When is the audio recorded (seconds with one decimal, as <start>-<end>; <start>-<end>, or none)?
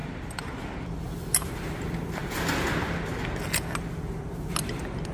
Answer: 1.3-2.2; 3.1-5.1